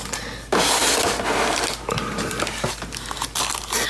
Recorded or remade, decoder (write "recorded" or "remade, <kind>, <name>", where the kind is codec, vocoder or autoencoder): recorded